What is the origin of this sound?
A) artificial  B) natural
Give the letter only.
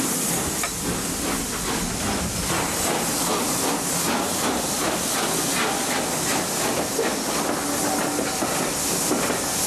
B